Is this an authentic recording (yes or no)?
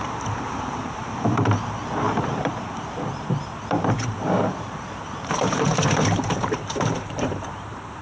no